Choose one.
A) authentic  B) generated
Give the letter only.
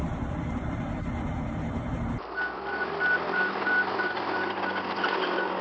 B